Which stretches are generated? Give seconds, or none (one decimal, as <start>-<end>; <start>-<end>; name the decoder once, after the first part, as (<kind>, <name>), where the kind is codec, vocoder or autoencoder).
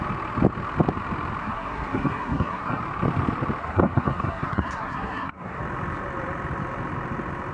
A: 1.4-2.8 (codec, SNAC); 3.6-5.6